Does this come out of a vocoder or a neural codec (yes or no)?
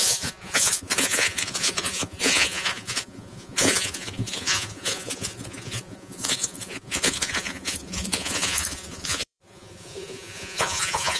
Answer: yes